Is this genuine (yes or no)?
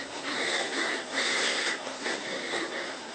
no